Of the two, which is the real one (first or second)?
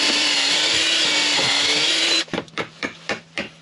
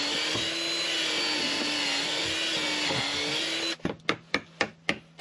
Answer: second